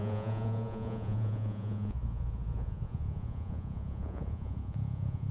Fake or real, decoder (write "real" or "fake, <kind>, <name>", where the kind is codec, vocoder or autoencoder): fake, vocoder, Vocos